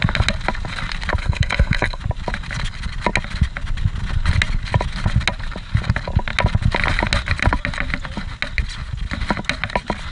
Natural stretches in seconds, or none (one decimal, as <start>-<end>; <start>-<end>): 0.0-1.2; 2.0-10.1